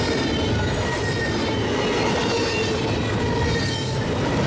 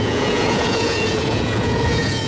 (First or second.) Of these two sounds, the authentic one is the first